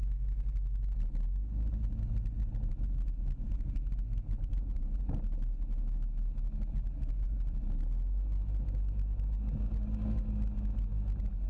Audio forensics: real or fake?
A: real